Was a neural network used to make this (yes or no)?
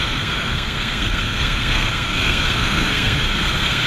yes